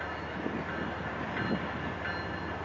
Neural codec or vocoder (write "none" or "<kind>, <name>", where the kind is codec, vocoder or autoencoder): none